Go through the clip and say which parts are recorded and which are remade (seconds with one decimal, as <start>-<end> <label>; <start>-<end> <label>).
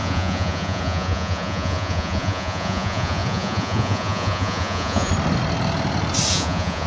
0.0-5.1 remade; 5.1-6.3 recorded; 6.3-6.9 remade